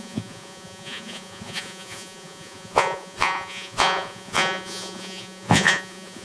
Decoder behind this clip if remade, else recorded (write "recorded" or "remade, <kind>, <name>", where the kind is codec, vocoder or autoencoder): remade, vocoder, Vocos